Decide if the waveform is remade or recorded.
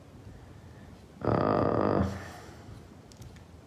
recorded